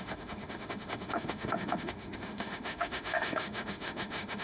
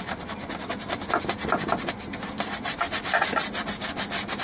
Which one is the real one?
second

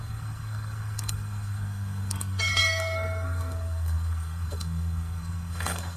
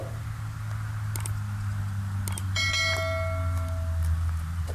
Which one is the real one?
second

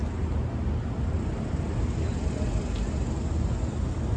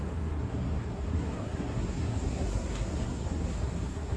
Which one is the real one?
first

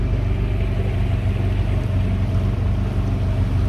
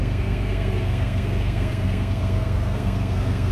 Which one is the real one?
first